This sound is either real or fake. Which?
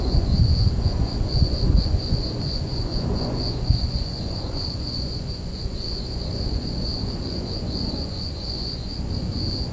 fake